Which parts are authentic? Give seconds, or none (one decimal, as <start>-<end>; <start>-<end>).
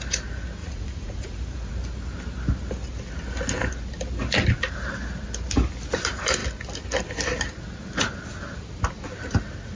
0.0-0.6; 1.7-9.8